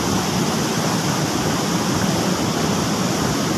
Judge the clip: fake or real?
real